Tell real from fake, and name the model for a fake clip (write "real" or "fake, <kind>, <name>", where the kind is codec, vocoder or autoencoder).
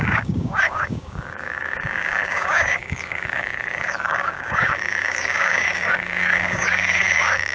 fake, codec, DAC